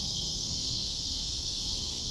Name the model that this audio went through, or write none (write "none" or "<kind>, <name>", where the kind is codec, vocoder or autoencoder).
codec, SNAC